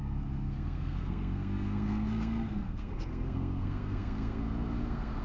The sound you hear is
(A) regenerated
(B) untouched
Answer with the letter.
A